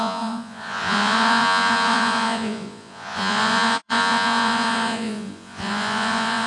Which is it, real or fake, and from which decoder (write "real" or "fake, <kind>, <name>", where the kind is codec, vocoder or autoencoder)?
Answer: fake, vocoder, Vocos